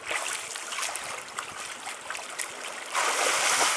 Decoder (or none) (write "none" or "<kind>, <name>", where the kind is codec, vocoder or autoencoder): none